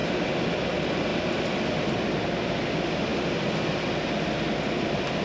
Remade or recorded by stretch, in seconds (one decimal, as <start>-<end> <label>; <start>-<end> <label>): 0.0-5.2 recorded